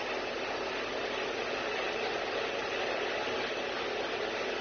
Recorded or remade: recorded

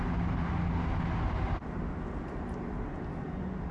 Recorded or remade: recorded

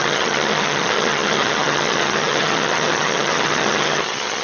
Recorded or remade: remade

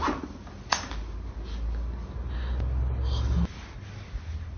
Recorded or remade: recorded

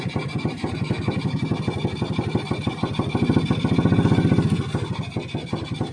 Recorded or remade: recorded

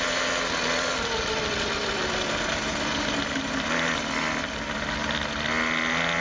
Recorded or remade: recorded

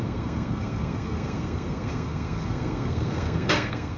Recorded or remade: remade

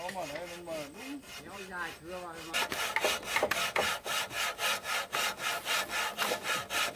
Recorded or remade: recorded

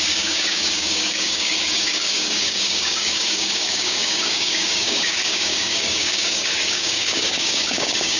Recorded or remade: remade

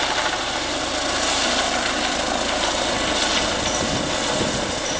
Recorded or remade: recorded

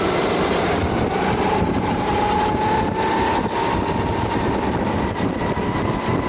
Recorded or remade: recorded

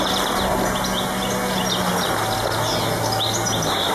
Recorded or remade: recorded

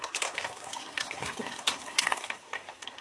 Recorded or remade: remade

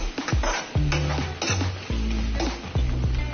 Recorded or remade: recorded